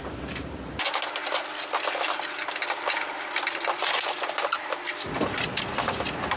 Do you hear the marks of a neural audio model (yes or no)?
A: no